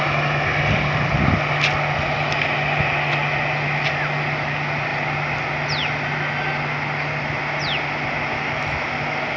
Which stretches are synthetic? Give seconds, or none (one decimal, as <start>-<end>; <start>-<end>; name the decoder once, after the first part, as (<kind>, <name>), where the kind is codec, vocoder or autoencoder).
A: none